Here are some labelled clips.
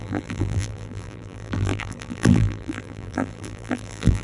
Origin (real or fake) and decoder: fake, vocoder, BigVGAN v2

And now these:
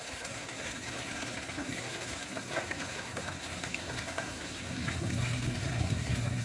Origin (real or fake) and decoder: fake, codec, SNAC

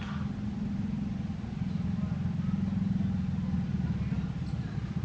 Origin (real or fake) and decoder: real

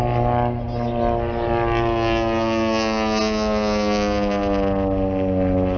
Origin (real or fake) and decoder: real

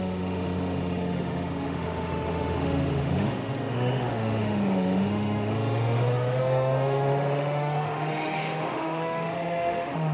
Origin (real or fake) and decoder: fake, autoencoder, DAC-VAE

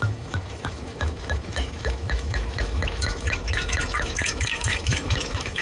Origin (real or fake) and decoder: fake, autoencoder, DAC-VAE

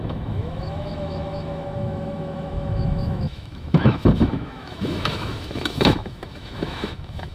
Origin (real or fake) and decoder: fake, autoencoder, DAC-VAE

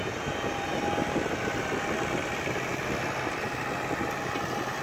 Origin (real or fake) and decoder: real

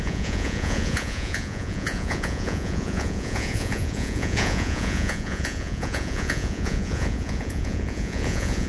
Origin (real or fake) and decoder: fake, vocoder, Vocos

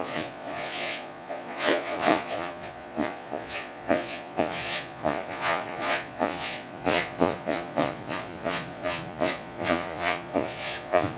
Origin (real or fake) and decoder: fake, vocoder, Vocos